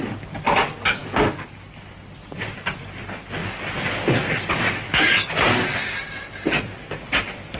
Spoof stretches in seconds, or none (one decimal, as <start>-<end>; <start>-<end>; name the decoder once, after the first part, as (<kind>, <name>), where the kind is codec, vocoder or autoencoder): none